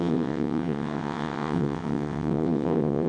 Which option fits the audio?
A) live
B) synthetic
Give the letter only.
B